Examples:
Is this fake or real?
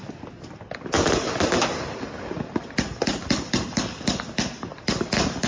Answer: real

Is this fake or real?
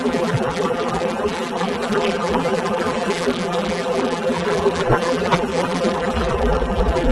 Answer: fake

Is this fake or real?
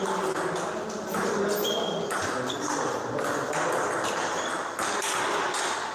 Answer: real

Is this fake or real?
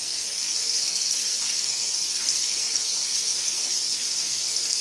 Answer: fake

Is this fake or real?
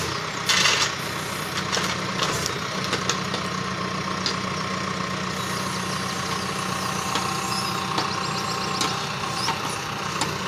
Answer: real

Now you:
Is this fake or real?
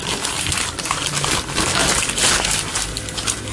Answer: real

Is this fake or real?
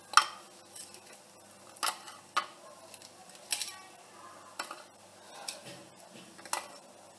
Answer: real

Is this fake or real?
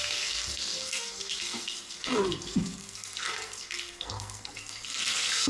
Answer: fake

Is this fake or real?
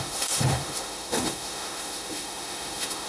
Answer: fake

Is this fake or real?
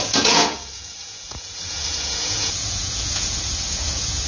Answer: fake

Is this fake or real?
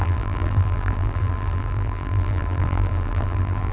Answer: fake